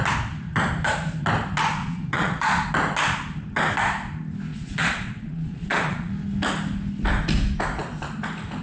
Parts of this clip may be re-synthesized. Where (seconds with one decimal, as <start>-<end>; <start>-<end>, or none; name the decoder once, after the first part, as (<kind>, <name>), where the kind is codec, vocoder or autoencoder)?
1.8-2.7 (vocoder, Vocos); 4.5-6.1